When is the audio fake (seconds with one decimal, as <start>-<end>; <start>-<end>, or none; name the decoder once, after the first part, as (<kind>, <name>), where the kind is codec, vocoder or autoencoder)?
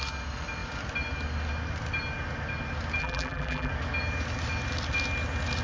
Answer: 3.0-3.7 (vocoder, BigVGAN v2)